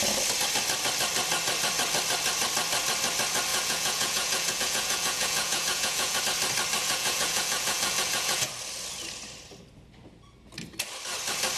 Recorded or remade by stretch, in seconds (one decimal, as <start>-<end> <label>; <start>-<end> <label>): 0.0-3.5 recorded; 3.5-6.2 remade; 6.2-6.8 recorded; 6.8-8.5 remade; 8.5-11.6 recorded